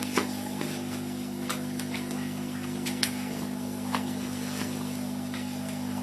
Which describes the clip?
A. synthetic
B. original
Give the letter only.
A